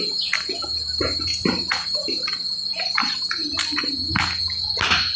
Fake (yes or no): no